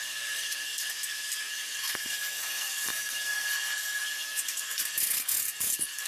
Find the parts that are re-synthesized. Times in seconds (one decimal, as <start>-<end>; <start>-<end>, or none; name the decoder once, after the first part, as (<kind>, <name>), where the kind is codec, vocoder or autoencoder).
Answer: 0.0-6.1 (codec, SNAC)